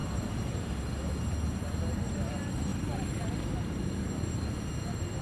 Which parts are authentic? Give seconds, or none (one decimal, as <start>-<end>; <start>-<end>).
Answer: 0.7-2.7; 3.8-5.2